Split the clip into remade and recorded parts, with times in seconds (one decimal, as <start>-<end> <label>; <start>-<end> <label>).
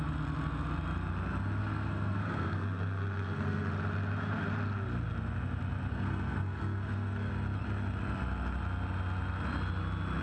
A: 0.0-1.6 recorded; 1.6-3.7 remade; 3.7-5.9 recorded; 5.9-7.3 remade; 7.3-10.2 recorded